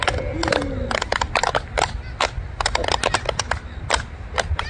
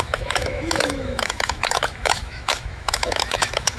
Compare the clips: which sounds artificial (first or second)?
second